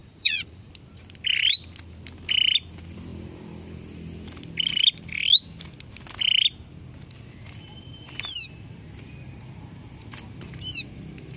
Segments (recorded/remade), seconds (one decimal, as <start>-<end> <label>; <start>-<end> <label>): 0.0-0.7 remade; 0.7-11.4 recorded